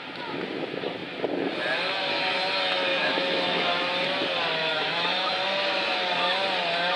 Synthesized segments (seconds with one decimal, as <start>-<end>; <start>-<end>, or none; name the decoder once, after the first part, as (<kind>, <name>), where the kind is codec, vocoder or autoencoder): 2.9-3.9 (autoencoder, DAC-VAE); 4.7-5.3